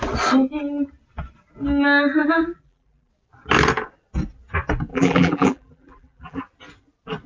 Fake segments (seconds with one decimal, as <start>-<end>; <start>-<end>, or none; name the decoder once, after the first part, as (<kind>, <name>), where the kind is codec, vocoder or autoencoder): 2.2-3.1 (vocoder, BigVGAN v2); 4.9-6.4